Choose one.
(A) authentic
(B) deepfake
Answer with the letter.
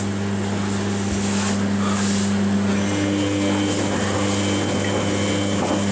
A